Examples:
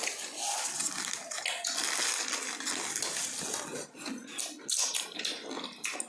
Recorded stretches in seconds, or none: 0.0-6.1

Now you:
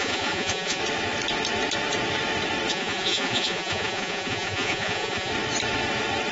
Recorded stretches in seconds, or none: 0.8-2.7; 5.3-6.3

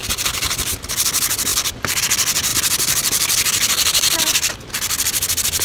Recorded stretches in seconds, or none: 0.9-1.5; 2.0-2.5; 4.5-5.6

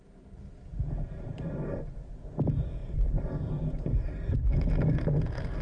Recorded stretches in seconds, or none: 0.0-5.6